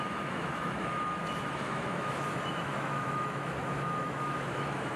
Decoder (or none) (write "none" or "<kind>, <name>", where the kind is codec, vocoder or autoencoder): autoencoder, DAC-VAE